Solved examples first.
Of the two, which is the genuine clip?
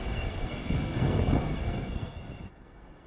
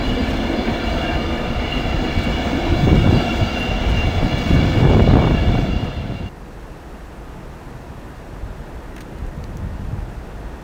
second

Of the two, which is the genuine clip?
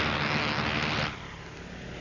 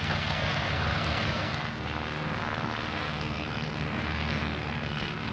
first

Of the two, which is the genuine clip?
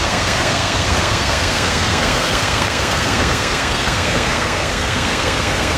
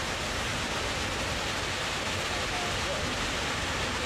second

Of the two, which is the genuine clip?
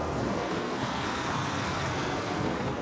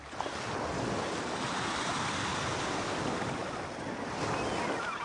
second